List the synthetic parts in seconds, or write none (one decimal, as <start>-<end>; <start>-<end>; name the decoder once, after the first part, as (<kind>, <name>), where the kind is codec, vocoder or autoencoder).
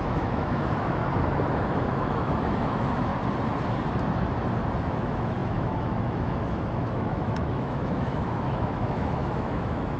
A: 0.0-1.0 (autoencoder, DAC-VAE); 1.6-3.1; 4.8-10.0